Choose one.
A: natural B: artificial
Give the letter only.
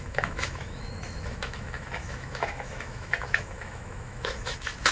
B